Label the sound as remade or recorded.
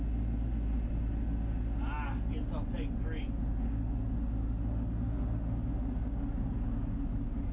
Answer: recorded